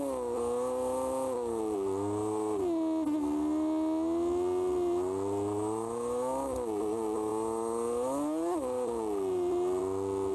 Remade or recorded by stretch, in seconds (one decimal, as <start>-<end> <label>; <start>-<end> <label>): 0.0-10.3 recorded